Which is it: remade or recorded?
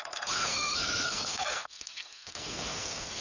remade